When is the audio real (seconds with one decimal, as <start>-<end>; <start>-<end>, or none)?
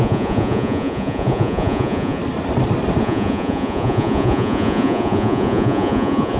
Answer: 2.2-3.0